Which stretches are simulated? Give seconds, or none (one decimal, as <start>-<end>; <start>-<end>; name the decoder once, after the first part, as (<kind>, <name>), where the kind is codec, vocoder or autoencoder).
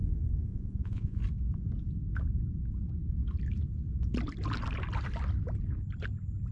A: 0.5-1.2 (vocoder, Vocos)